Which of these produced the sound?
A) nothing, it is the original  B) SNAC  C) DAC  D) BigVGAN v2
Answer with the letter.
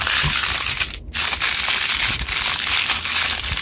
A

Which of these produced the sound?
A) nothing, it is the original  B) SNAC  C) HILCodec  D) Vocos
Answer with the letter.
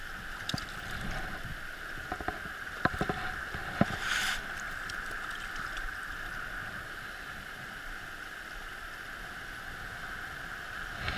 A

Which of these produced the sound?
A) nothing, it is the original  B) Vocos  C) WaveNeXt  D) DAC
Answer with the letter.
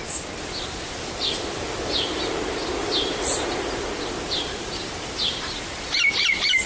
A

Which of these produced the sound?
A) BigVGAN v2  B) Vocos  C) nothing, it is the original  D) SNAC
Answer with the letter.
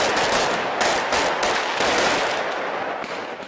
C